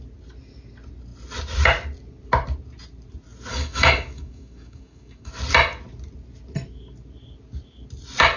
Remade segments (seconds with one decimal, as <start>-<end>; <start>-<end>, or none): 3.5-5.3